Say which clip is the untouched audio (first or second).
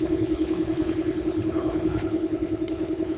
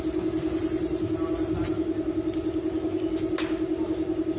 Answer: second